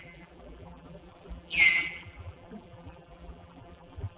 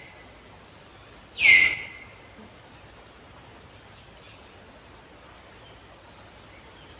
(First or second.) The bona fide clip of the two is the second